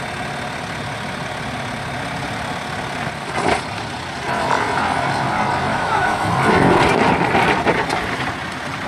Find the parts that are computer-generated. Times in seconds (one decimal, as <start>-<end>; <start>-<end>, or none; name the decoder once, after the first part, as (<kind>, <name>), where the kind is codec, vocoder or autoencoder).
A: 5.7-6.2 (autoencoder, DAC-VAE)